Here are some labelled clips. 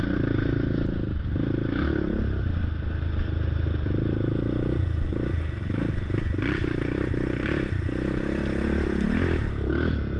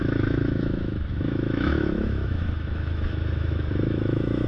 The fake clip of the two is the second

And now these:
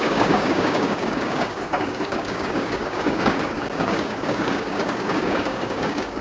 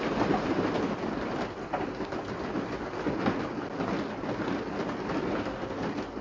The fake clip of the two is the first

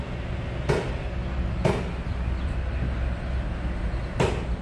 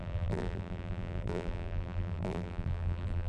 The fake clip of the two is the second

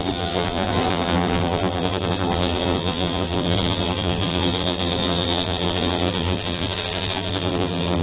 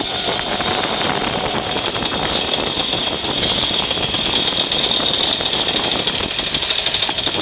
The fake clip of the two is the first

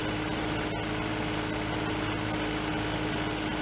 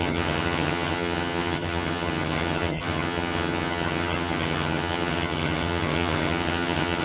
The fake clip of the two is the second